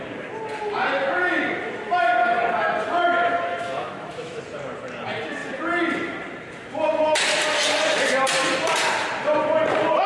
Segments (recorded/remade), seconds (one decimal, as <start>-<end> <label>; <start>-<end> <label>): 0.0-3.5 recorded; 3.5-4.4 remade; 4.4-10.1 recorded